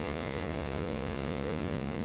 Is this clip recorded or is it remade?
remade